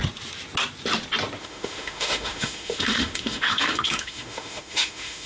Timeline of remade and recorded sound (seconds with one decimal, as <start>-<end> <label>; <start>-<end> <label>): 0.0-1.4 recorded; 1.4-5.3 remade